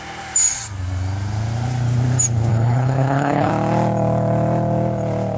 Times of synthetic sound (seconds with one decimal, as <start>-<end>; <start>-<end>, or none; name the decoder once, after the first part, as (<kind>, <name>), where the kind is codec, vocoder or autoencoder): 2.5-3.5 (codec, HILCodec)

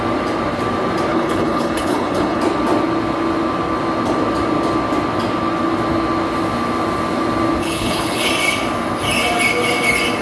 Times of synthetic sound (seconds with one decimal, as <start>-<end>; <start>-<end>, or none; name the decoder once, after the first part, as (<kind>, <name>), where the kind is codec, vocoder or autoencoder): 1.1-2.4 (codec, HILCodec); 7.6-8.3